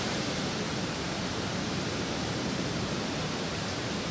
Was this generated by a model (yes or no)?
yes